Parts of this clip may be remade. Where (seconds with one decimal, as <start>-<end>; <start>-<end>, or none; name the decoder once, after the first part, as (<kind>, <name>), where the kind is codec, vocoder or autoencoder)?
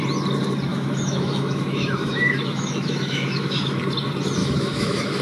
0.7-3.8 (autoencoder, DAC-VAE); 4.4-5.2